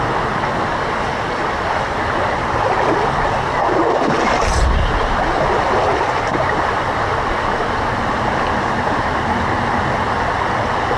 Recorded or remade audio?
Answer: recorded